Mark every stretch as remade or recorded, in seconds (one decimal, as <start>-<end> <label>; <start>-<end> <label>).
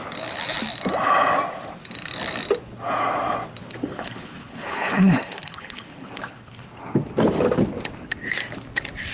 0.0-3.6 recorded; 3.6-6.7 remade; 6.7-9.1 recorded